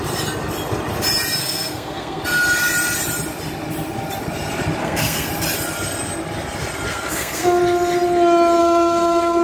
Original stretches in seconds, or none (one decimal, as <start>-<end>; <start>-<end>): 0.0-1.4; 2.2-4.8; 5.3-6.9; 7.6-8.6